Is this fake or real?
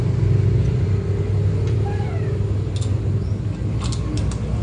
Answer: real